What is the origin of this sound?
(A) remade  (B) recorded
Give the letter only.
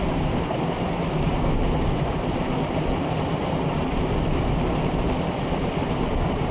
B